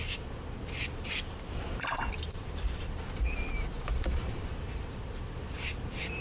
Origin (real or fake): fake